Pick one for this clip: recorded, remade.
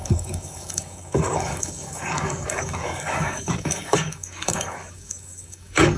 remade